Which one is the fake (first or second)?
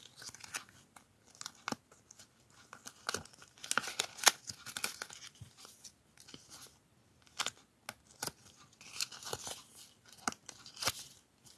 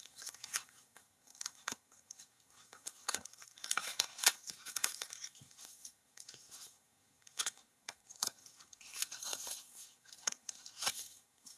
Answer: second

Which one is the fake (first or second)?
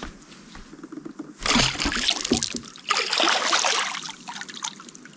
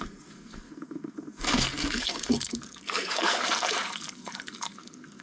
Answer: second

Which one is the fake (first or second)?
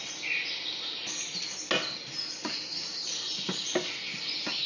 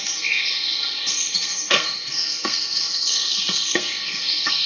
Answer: second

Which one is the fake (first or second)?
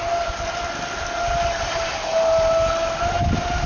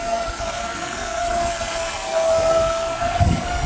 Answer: second